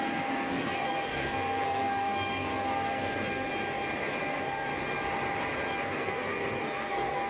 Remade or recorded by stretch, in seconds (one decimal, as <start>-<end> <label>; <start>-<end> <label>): 0.0-3.5 remade; 3.5-4.2 recorded; 4.2-4.7 remade; 4.7-5.7 recorded; 5.7-7.3 remade